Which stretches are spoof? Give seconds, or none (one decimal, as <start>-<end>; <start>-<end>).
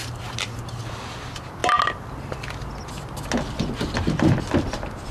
0.0-0.8